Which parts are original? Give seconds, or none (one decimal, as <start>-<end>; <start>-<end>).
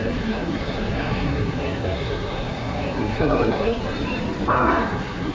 3.8-4.5